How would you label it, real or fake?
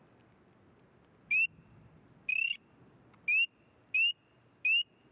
real